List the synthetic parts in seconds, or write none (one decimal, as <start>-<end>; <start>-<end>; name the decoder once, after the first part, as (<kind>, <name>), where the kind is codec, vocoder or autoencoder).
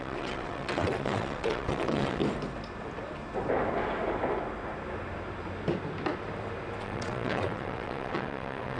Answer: 0.0-2.2 (vocoder, WaveNeXt); 6.8-8.8